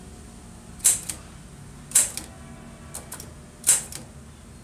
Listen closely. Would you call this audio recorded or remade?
recorded